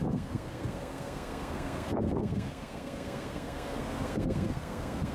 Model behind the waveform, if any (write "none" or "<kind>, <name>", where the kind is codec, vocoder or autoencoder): codec, SNAC